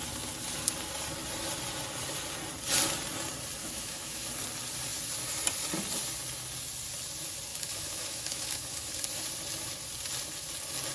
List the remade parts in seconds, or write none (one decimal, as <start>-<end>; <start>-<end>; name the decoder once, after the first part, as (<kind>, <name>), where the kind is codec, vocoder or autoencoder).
3.6-4.2 (autoencoder, DAC-VAE); 7.5-9.0